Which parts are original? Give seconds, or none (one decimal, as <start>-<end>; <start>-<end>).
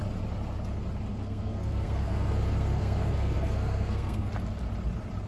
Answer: 0.0-1.1; 4.3-5.3